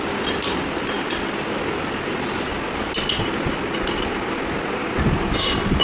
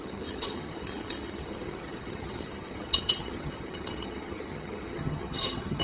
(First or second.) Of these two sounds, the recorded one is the first